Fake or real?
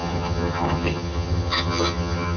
fake